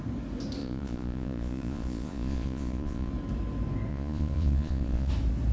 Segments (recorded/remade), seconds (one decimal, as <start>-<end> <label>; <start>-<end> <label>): 0.0-0.6 recorded; 0.6-3.1 remade; 3.1-3.9 recorded; 3.9-5.1 remade; 5.1-5.5 recorded